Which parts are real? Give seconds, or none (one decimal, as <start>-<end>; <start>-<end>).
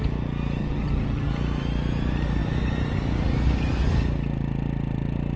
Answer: 0.0-0.6; 1.3-5.4